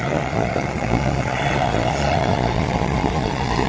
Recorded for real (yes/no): no